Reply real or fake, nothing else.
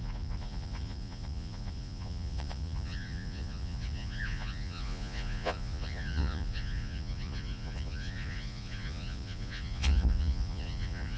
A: fake